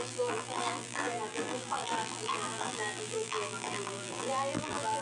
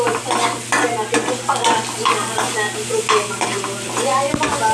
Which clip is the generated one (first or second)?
first